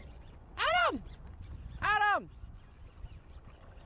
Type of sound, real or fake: fake